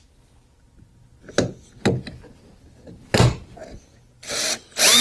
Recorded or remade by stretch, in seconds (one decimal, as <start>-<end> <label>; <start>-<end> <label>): 0.0-5.0 recorded